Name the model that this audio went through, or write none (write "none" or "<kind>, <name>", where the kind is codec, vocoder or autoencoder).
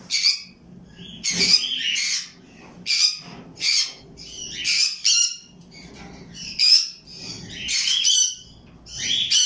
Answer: none